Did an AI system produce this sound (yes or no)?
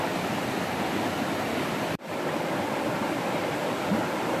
yes